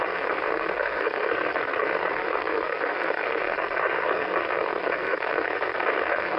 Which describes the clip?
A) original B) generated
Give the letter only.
B